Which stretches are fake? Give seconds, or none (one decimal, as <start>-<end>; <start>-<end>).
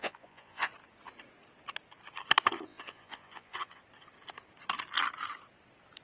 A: 0.0-0.7; 2.7-3.8